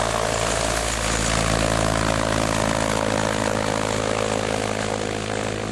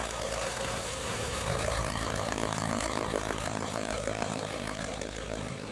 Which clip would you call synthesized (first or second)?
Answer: second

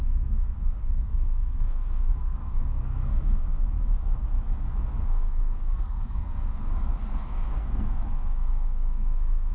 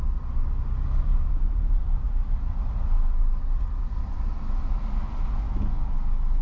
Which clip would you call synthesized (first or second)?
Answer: first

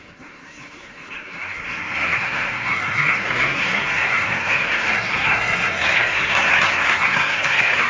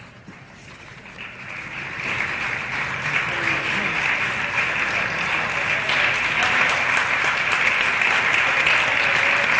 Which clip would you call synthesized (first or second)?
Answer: first